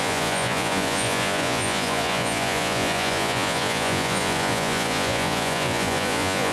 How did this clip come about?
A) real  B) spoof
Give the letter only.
B